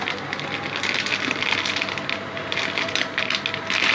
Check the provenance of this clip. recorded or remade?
recorded